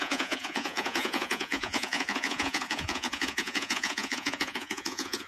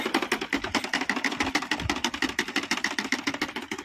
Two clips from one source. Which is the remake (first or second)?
first